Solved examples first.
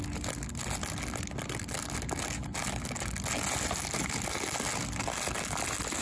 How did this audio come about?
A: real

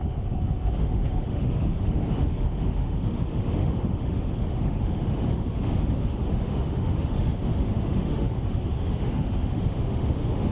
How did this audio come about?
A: fake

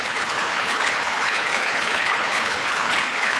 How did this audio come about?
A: fake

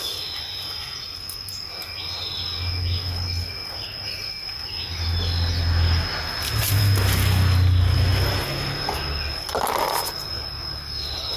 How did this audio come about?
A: real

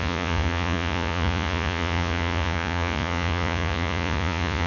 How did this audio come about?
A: fake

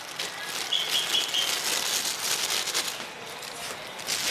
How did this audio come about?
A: real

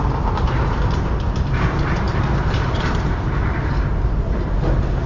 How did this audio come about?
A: fake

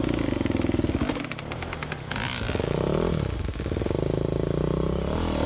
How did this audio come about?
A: real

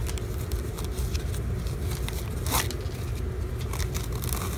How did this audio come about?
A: real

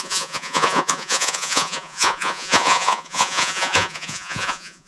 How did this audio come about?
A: fake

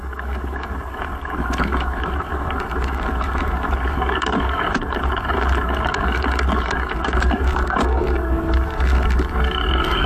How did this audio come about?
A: fake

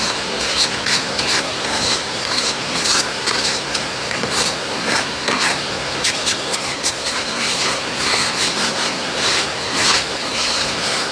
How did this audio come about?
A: fake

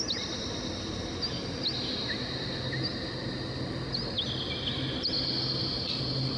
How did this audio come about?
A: real